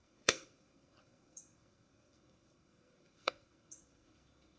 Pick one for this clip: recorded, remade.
remade